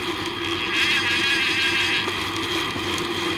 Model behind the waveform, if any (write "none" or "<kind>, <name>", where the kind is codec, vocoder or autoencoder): none